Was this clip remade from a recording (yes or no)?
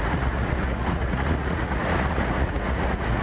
yes